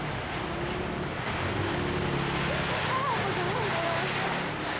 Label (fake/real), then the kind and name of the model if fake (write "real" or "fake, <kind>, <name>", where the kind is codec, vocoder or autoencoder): real